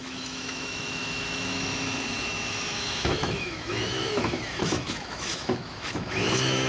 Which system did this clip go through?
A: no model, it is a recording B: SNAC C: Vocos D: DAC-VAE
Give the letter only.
D